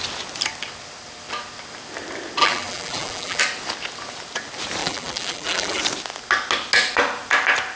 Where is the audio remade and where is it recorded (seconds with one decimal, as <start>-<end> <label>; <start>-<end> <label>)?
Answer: 0.0-2.4 recorded; 2.4-3.4 remade; 3.4-4.8 recorded; 4.8-5.8 remade; 5.8-7.8 recorded